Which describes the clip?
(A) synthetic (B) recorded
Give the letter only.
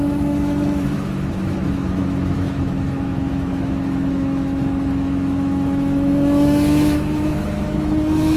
A